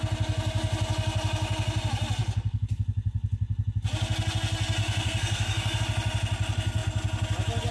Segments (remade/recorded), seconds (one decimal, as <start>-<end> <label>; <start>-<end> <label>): 0.0-4.8 recorded; 4.8-5.8 remade; 5.8-7.7 recorded